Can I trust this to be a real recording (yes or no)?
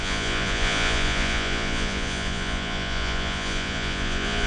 no